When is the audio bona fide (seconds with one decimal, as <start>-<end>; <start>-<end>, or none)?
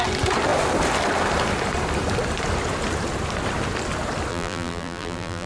0.0-4.3